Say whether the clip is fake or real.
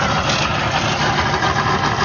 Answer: real